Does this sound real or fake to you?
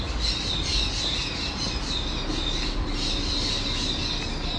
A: real